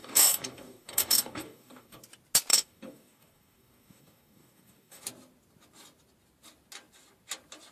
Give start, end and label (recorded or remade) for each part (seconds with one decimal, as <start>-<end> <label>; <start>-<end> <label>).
0.0-2.0 remade; 2.0-2.5 recorded; 2.5-5.0 remade; 5.0-7.7 recorded